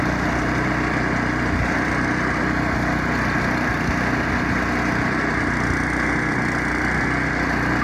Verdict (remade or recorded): recorded